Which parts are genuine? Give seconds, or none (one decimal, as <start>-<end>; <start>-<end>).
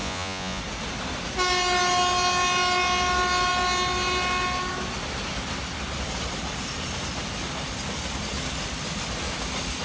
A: 0.6-9.8